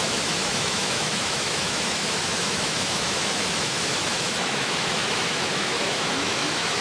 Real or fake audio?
fake